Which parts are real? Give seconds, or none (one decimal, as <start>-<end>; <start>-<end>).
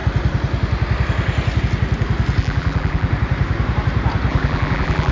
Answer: 0.0-2.4; 3.1-4.3